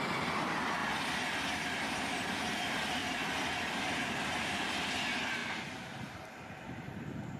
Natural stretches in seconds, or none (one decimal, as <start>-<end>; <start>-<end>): 0.0-0.8; 1.3-3.0; 4.6-7.4